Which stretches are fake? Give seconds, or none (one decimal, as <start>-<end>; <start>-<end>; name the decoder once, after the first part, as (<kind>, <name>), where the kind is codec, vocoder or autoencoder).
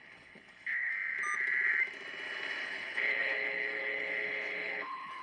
0.0-0.9 (codec, HILCodec); 2.6-5.2